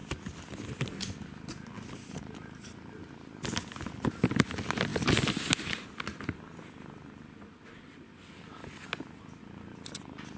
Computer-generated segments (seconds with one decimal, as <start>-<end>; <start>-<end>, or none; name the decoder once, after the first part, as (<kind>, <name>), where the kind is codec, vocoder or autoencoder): none